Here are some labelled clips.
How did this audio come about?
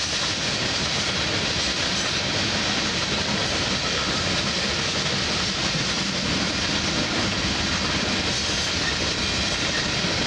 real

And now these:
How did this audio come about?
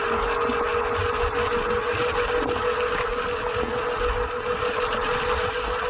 real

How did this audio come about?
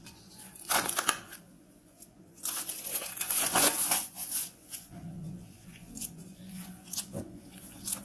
fake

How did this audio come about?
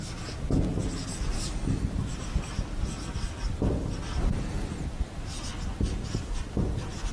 real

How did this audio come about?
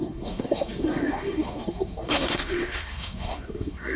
fake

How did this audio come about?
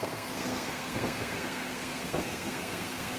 fake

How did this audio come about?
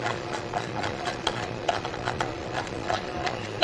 fake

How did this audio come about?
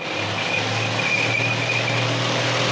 real